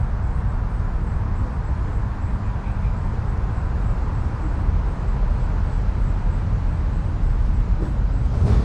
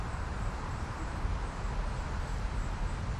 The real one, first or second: first